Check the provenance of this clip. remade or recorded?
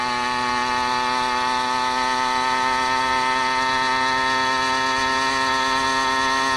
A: recorded